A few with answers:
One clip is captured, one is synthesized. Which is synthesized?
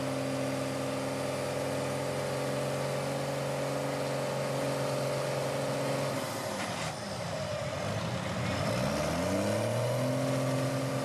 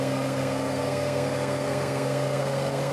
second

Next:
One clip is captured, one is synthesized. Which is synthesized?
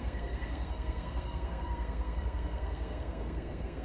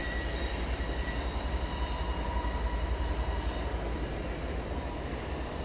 first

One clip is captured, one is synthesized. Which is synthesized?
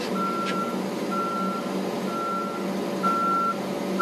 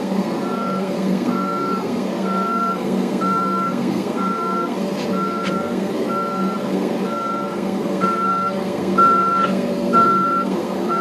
second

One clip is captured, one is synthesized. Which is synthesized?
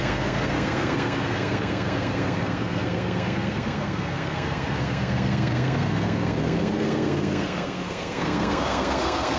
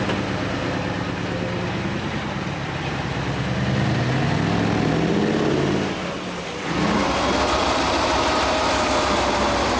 first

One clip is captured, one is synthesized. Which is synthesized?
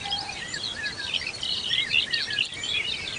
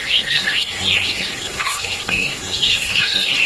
second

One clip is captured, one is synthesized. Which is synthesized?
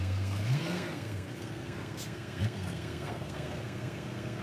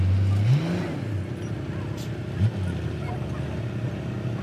first